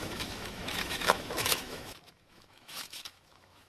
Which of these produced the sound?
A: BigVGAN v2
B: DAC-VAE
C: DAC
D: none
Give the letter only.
B